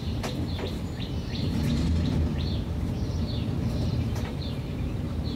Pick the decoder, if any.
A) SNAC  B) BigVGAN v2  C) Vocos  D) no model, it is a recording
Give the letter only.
B